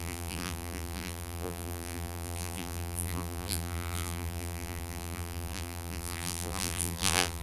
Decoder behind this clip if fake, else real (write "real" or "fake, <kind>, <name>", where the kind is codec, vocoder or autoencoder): fake, vocoder, BigVGAN v2